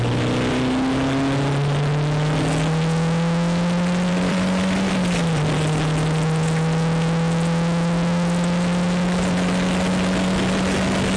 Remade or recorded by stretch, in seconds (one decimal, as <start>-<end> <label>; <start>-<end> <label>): 0.0-4.1 recorded; 4.1-4.9 remade; 4.9-11.2 recorded